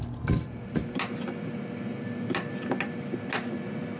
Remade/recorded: recorded